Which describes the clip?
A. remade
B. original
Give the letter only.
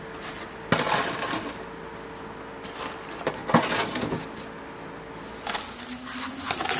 B